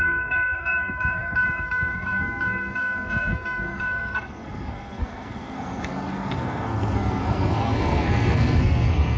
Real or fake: fake